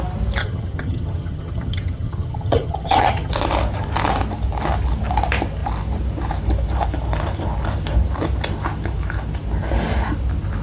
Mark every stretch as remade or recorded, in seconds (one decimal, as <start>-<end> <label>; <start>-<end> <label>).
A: 0.0-0.4 recorded; 0.4-3.3 remade; 3.3-10.6 recorded